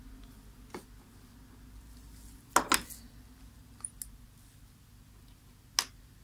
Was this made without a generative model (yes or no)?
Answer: yes